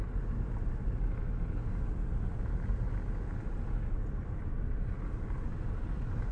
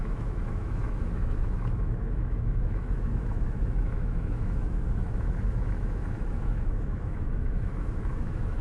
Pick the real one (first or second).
first